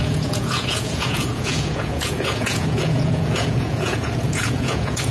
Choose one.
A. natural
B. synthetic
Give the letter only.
B